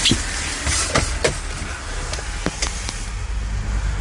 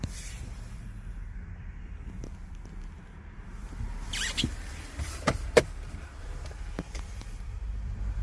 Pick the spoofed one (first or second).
second